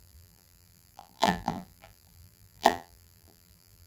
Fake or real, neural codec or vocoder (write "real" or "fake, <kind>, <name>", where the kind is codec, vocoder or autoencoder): fake, vocoder, BigVGAN v2